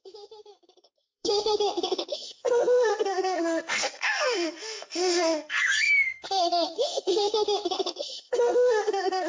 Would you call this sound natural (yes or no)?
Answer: no